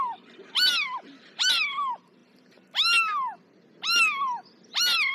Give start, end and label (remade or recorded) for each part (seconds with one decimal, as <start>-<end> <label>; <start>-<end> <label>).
0.0-5.1 recorded